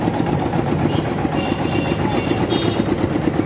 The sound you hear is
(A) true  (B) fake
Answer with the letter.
A